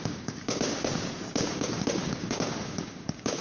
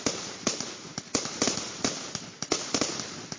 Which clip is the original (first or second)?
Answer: second